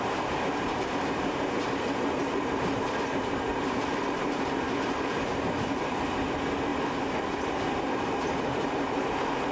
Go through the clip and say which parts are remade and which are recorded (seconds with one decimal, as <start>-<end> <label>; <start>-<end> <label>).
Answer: 0.0-6.7 remade; 6.7-8.0 recorded; 8.0-9.5 remade